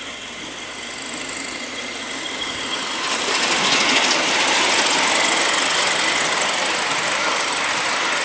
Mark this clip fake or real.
real